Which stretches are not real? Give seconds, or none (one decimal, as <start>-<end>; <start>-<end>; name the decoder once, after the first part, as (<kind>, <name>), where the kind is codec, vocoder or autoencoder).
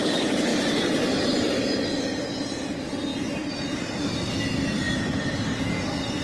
3.1-3.7 (vocoder, BigVGAN v2)